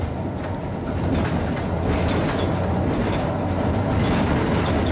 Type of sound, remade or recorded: recorded